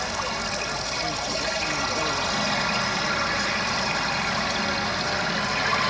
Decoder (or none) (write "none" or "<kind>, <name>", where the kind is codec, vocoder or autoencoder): none